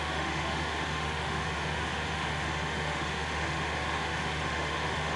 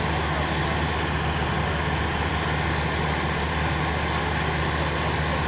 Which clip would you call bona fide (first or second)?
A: second